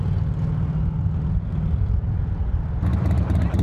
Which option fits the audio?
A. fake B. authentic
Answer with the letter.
B